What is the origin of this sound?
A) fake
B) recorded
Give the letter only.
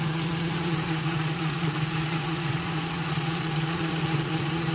A